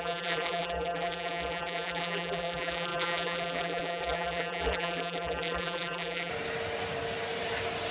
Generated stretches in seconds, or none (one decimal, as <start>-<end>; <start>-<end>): 0.0-6.3